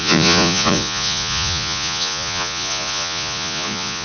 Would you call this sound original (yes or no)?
no